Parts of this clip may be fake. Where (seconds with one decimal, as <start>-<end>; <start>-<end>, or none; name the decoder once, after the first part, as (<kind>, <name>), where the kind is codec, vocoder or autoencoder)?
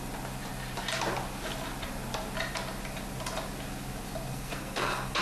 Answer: 4.3-5.2 (codec, SNAC)